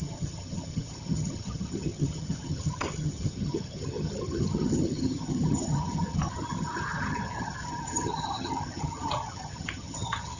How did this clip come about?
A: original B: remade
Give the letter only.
B